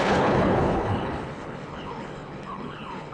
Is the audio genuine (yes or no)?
no